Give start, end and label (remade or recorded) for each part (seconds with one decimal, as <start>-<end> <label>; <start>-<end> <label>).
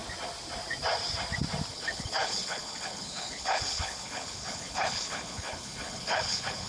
0.0-1.7 recorded; 1.7-6.7 remade